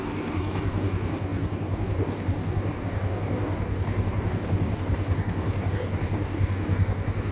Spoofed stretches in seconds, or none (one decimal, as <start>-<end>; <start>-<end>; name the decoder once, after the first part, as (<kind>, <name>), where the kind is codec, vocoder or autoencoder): 0.0-7.3 (codec, DAC)